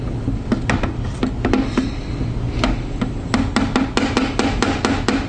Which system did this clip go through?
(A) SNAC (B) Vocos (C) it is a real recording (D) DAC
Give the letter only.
C